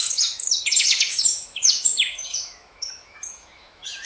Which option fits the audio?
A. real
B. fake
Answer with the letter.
B